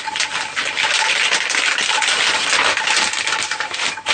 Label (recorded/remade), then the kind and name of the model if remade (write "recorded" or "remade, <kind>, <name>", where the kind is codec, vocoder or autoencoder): recorded